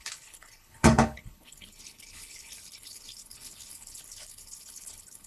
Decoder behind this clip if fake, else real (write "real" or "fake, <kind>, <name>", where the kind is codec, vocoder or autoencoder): fake, codec, HILCodec